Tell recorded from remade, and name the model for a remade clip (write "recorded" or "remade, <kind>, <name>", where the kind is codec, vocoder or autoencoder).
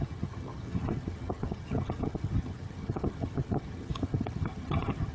remade, vocoder, HiFi-GAN